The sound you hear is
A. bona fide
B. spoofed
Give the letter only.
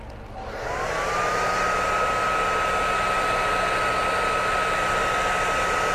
A